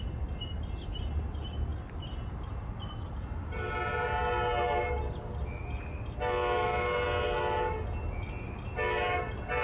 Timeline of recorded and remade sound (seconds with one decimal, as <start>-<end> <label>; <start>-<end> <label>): 0.0-9.6 recorded